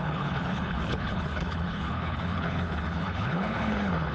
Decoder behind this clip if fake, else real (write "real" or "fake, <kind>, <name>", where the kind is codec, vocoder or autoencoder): fake, codec, HILCodec